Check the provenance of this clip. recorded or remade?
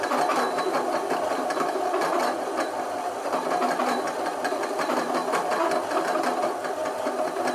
remade